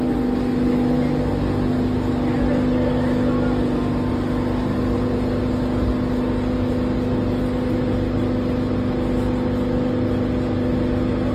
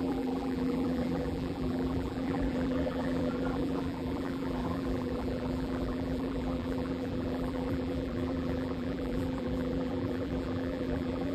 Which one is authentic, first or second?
first